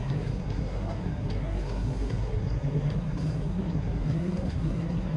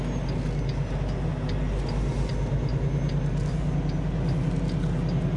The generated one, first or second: first